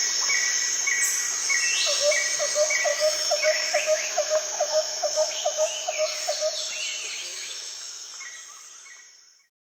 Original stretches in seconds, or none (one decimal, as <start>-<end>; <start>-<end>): 0.0-2.9; 5.9-7.2; 8.1-9.7